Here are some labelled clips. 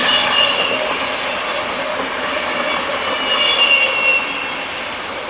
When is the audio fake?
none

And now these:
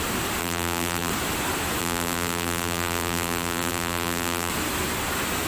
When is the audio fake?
0.4-1.1 (vocoder, BigVGAN v2); 1.8-4.5

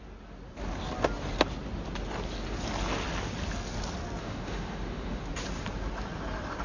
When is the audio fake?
4.2-5.3 (autoencoder, DAC-VAE)

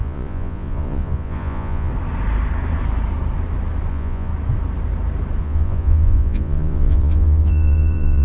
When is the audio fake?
0.0-1.9 (vocoder, Vocos); 3.9-4.3; 5.4-8.2

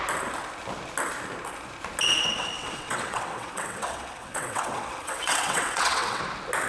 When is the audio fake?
2.2-6.2 (vocoder, WaveNeXt)

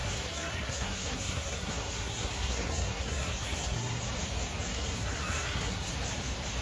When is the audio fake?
0.0-4.0 (codec, SNAC); 4.7-5.9

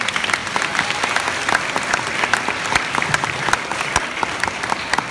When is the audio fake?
none

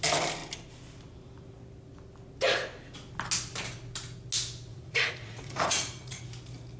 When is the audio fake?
4.7-6.2 (vocoder, Vocos)